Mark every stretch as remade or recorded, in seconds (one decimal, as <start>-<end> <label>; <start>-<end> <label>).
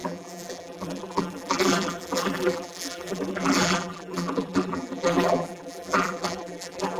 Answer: 0.0-7.0 remade